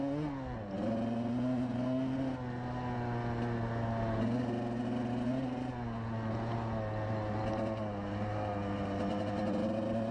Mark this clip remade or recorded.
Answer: recorded